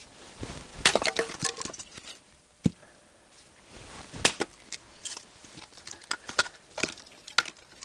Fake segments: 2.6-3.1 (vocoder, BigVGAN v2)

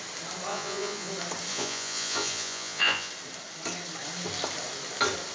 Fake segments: 0.5-1.1 (vocoder, Vocos); 1.5-3.1

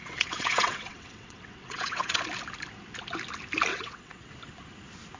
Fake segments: 0.0-2.2 (vocoder, WaveNeXt); 3.7-4.3

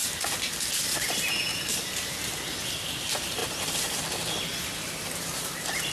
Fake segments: none

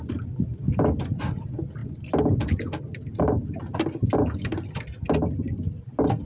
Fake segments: none

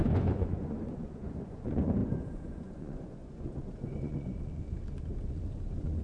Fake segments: 0.0-6.0 (vocoder, Vocos)

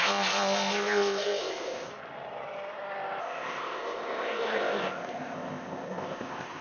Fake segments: 0.0-1.9 (codec, ZipCodec); 3.2-6.6